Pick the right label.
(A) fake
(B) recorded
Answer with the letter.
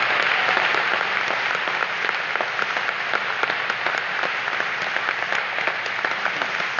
B